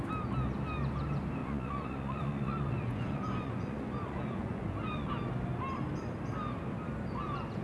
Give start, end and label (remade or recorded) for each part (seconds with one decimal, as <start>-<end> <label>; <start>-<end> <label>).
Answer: 0.0-1.4 recorded; 1.4-5.1 remade; 5.1-7.6 recorded